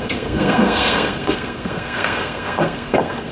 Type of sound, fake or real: fake